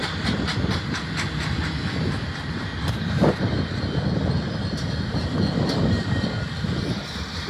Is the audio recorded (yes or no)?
yes